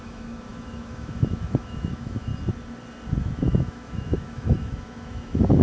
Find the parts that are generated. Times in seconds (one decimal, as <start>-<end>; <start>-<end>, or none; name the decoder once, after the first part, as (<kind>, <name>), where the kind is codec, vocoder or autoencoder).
0.0-2.3 (autoencoder, DAC-VAE); 3.2-5.6